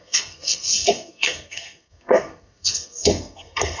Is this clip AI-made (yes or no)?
yes